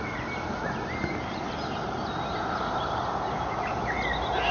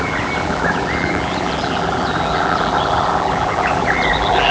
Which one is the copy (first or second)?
second